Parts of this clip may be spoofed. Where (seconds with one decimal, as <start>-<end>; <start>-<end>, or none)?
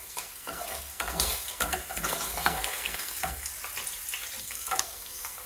0.0-3.5; 4.4-5.5